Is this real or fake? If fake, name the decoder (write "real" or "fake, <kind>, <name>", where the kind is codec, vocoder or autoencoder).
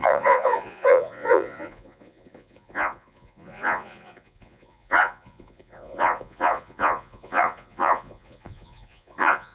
fake, vocoder, Vocos